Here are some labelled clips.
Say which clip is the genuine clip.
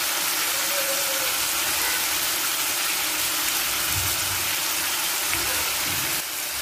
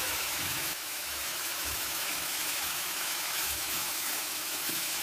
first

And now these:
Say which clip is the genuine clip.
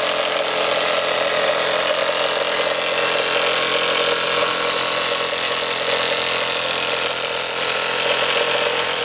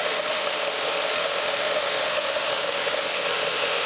first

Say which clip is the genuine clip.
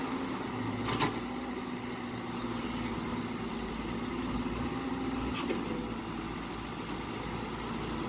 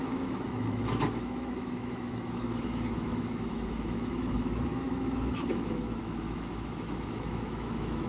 first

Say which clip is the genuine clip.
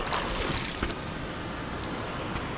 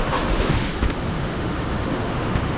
first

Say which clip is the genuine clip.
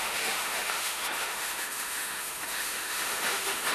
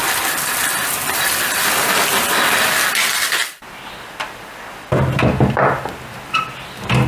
second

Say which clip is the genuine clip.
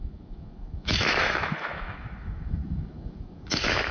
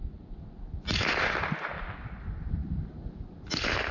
second